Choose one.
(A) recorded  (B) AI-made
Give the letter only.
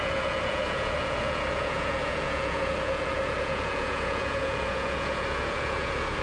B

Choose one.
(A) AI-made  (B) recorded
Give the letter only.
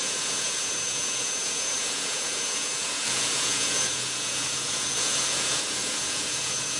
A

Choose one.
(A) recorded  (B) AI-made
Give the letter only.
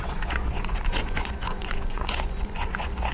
B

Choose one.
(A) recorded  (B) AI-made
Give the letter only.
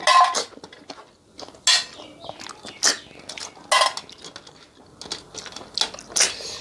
A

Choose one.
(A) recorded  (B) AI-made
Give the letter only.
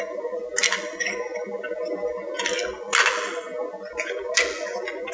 A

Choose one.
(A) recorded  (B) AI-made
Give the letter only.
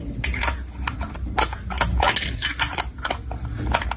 A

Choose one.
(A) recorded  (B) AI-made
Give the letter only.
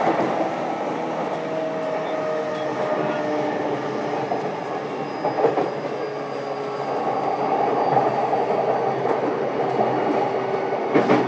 A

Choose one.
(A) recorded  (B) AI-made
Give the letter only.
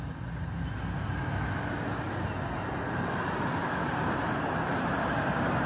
A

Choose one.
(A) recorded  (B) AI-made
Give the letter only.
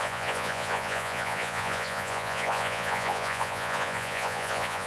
B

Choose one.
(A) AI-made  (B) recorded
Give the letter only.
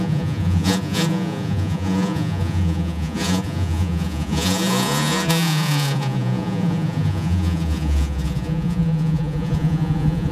A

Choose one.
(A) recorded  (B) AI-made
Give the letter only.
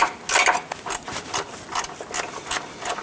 A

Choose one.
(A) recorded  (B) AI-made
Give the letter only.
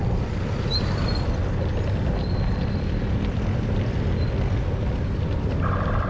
A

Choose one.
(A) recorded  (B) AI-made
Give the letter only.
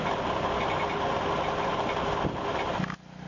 A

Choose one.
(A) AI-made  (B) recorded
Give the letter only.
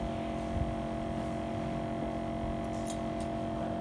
B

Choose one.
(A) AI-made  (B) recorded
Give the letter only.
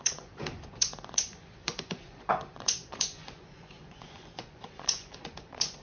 A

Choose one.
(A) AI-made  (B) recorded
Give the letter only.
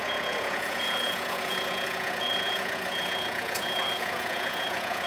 A